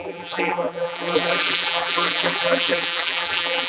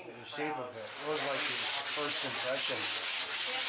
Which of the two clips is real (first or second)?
second